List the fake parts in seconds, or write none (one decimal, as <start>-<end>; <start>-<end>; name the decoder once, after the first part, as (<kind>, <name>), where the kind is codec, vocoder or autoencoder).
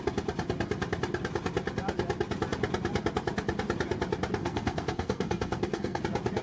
4.4-6.0 (codec, SNAC)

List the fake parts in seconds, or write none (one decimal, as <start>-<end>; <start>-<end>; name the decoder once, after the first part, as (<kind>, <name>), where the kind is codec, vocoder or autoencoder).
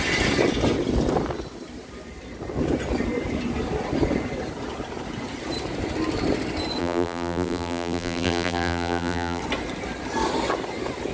6.8-9.4 (vocoder, BigVGAN v2)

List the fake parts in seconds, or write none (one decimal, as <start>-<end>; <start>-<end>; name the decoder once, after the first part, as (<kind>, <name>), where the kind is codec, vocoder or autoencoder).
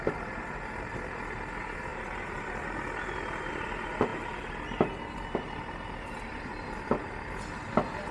none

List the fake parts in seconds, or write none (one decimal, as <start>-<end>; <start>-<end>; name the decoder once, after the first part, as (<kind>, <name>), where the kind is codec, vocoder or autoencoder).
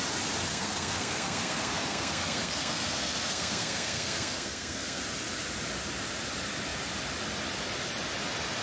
0.5-5.0 (codec, SNAC)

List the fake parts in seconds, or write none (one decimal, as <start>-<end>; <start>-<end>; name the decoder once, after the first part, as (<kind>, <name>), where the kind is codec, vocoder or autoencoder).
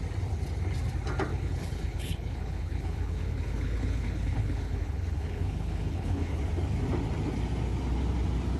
1.3-6.4 (codec, HILCodec)